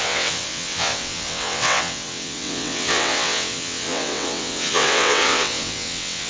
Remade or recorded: remade